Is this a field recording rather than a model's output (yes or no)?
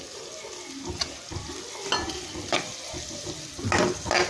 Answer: yes